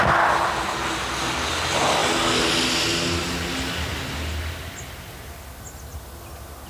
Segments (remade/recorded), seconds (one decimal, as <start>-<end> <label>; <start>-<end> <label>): 0.0-6.7 recorded